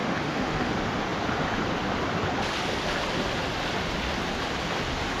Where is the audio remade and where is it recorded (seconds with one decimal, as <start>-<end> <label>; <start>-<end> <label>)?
0.0-0.7 remade; 0.7-5.2 recorded